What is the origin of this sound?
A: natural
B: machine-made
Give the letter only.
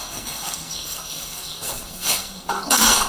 B